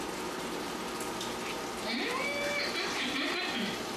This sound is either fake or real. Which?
real